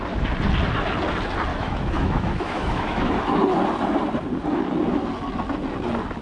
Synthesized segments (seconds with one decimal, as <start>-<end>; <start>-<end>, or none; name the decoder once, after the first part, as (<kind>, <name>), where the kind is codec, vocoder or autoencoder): 1.5-3.1 (autoencoder, DAC-VAE)